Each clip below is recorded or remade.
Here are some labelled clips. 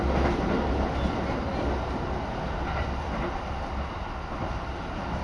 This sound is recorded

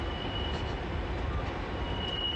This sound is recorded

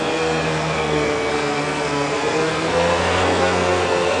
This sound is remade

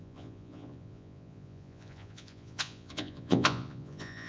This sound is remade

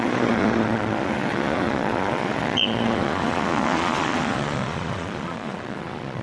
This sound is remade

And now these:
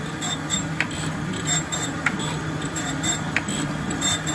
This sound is remade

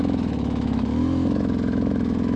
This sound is remade